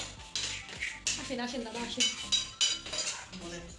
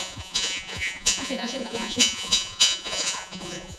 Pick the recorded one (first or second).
first